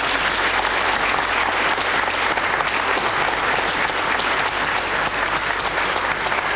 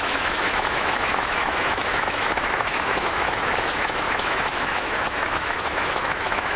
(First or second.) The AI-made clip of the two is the second